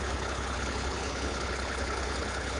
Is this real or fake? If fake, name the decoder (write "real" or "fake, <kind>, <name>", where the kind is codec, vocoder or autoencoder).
fake, codec, HILCodec